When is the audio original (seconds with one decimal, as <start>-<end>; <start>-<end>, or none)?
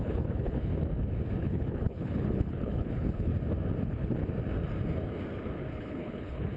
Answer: 0.7-1.4; 3.3-3.8; 4.2-5.8